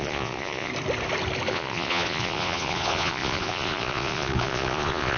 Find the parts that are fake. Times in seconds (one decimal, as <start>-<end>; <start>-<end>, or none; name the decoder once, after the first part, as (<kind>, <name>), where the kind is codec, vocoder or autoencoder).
0.0-0.7 (vocoder, Vocos); 1.5-5.2